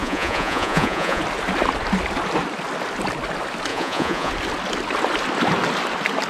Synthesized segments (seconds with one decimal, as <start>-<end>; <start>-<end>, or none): 0.0-1.2; 3.7-4.3